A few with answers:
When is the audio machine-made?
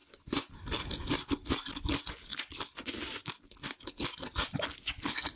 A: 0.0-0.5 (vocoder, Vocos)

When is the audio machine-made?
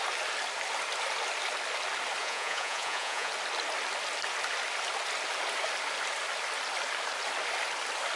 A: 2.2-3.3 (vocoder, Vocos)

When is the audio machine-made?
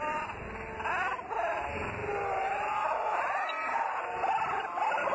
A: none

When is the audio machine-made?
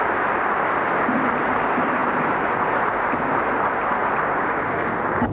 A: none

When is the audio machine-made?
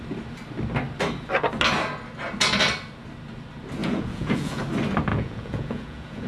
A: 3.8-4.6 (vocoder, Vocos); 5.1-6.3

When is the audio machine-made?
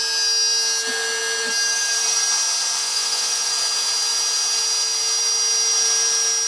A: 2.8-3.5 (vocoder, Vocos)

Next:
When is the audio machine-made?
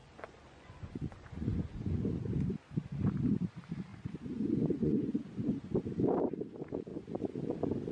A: 0.0-2.0 (vocoder, Vocos); 3.9-5.3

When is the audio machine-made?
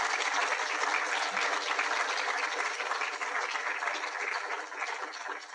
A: none